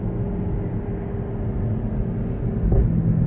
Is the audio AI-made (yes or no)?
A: no